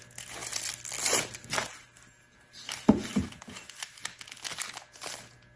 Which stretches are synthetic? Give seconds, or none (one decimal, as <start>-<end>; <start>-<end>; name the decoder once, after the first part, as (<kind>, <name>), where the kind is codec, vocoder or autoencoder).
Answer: none